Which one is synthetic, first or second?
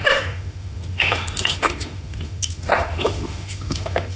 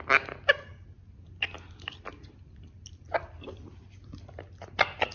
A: first